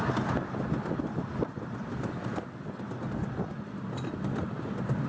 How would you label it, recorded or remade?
recorded